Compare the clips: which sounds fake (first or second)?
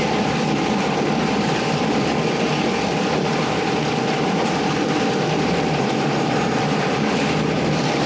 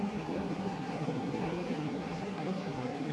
second